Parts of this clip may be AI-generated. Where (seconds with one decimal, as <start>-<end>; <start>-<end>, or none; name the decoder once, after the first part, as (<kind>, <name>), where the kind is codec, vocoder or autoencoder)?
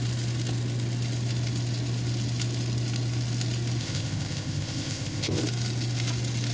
3.8-5.4 (codec, ZipCodec)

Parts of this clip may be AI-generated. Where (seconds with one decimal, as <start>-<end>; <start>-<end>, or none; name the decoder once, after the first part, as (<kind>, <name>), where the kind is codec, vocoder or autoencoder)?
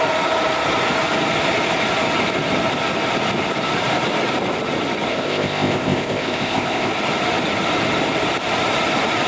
5.1-6.9 (codec, ZipCodec)